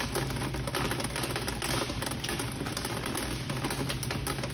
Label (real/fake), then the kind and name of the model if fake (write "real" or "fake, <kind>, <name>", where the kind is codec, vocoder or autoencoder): real